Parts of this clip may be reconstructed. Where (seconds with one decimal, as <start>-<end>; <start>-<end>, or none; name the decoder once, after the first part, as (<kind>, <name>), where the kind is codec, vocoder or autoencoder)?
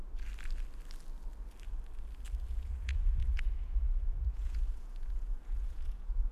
2.5-6.3 (vocoder, Vocos)